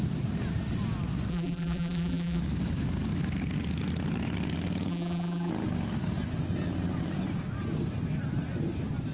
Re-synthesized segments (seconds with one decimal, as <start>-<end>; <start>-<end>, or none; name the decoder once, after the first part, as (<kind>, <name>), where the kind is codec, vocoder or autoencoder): 1.3-2.4 (vocoder, BigVGAN v2); 4.9-5.5